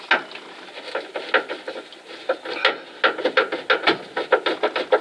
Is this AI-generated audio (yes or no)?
no